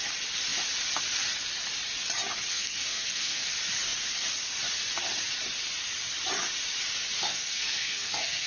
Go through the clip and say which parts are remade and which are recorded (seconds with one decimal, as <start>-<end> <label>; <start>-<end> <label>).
0.0-2.5 recorded; 2.5-3.5 remade; 3.5-7.3 recorded; 7.3-8.5 remade